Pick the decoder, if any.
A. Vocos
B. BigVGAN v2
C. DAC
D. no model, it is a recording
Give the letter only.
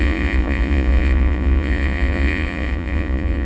A